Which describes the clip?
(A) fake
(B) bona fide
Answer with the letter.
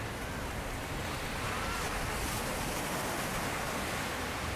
B